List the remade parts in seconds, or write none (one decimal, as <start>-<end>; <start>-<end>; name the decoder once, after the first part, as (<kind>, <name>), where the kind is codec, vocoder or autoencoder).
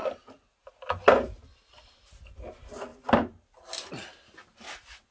none